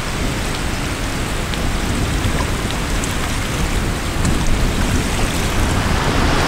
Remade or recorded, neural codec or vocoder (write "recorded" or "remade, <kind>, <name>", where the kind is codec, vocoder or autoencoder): recorded